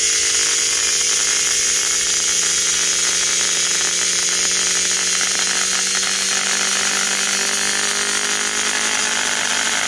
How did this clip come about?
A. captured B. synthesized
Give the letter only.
A